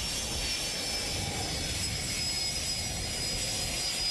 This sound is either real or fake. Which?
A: real